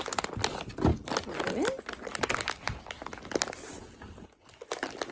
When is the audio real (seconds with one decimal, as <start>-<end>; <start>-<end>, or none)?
0.0-5.1